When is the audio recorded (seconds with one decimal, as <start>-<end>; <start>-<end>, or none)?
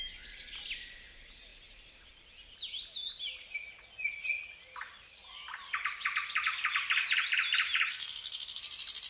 0.0-7.9; 8.6-9.1